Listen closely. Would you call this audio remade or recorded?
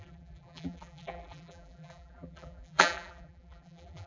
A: remade